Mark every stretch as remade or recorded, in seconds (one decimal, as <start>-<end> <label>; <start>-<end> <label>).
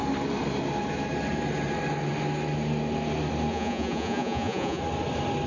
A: 0.0-3.5 recorded; 3.5-4.8 remade; 4.8-5.5 recorded